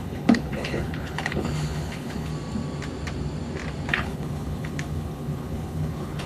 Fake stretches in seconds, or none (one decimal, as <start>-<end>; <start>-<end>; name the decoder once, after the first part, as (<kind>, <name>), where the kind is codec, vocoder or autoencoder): 0.0-2.3 (codec, HILCodec); 3.9-6.3